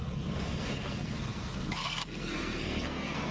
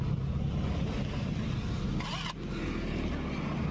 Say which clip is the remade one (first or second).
first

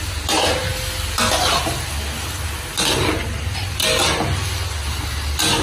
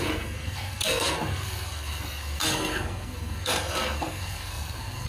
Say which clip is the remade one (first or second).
second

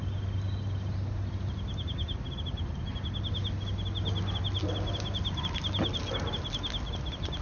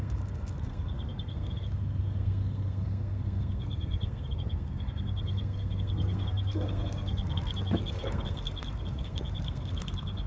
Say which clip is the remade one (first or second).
second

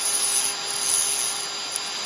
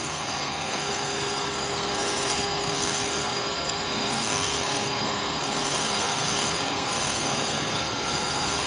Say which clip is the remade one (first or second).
second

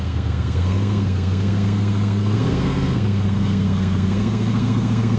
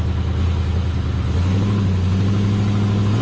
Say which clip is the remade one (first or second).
first